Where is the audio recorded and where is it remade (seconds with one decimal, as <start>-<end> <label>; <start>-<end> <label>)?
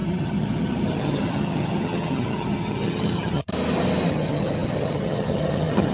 0.0-3.5 remade; 3.5-4.1 recorded; 4.1-5.9 remade